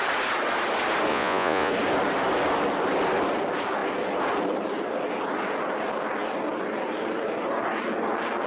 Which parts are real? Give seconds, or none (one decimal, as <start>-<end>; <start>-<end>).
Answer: 0.0-1.1; 1.7-8.5